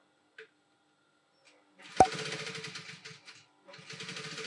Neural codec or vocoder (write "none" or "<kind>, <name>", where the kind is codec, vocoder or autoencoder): none